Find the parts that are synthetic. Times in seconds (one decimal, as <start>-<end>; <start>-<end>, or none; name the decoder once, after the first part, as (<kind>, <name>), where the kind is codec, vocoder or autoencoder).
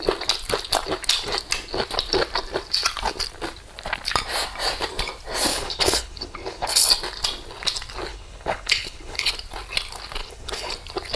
5.5-6.9 (codec, HILCodec); 8.1-9.3; 10.2-10.7